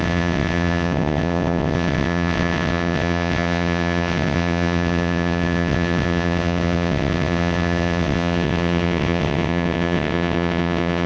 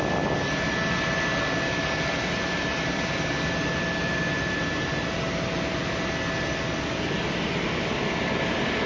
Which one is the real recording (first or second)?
second